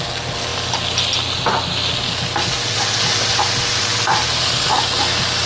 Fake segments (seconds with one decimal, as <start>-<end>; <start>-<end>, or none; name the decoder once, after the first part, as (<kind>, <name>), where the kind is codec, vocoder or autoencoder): none